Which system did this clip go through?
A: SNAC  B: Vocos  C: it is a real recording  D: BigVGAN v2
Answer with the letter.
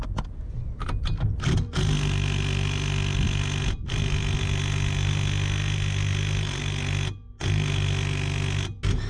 C